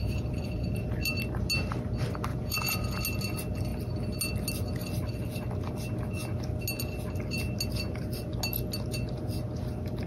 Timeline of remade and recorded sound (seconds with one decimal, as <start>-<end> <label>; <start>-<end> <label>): 0.0-0.8 remade; 0.8-2.3 recorded; 2.3-3.0 remade; 3.0-10.1 recorded